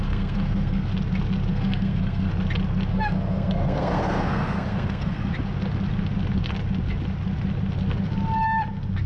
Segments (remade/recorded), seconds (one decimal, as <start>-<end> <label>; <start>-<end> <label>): 0.0-0.9 remade; 0.9-1.5 recorded; 1.5-2.3 remade; 2.3-2.9 recorded; 2.9-5.3 remade; 5.3-9.1 recorded